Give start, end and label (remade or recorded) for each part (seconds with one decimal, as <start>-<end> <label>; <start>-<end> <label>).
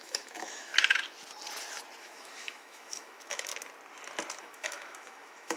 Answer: 0.0-0.7 remade; 0.7-2.0 recorded; 2.0-3.5 remade; 3.5-4.4 recorded; 4.4-5.6 remade